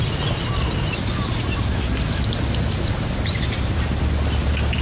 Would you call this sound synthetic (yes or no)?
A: no